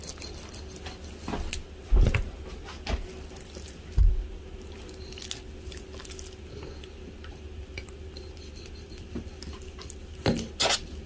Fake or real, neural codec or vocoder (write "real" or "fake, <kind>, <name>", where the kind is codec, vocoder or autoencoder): real